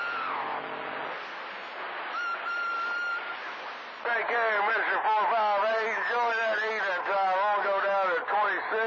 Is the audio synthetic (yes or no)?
no